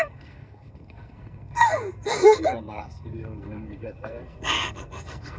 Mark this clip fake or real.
fake